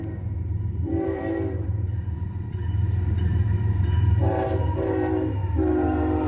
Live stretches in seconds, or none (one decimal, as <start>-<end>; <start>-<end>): none